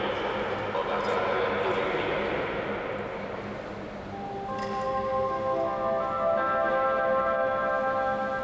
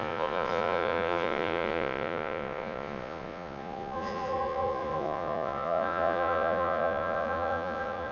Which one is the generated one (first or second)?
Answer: second